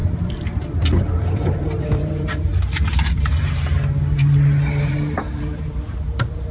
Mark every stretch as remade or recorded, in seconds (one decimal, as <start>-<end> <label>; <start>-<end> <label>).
0.0-0.8 recorded; 0.8-2.5 remade; 2.5-4.8 recorded; 4.8-6.5 remade